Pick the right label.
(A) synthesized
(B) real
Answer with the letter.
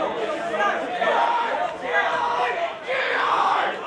A